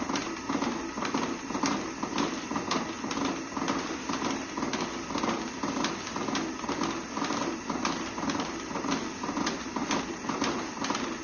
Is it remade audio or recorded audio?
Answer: recorded